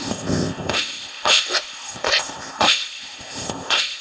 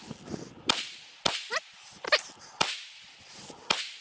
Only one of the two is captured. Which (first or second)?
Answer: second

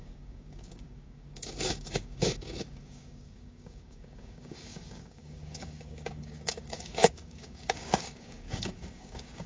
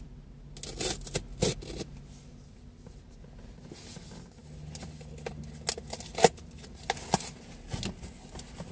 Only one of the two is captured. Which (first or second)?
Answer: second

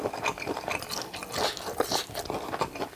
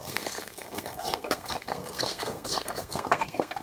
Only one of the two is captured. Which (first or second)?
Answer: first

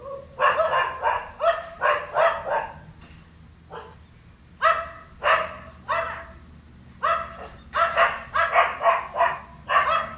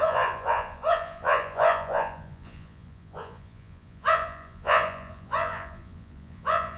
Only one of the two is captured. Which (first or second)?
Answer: first